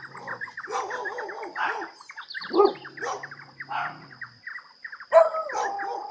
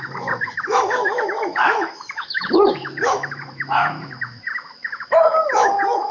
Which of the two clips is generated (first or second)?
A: second